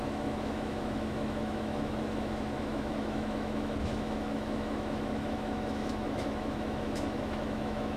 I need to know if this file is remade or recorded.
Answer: remade